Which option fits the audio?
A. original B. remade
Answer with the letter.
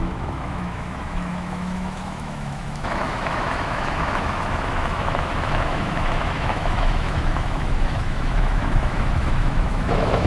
B